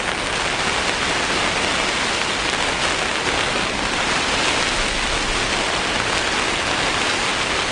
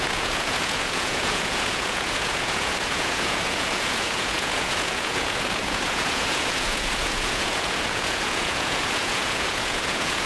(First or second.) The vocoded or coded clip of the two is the second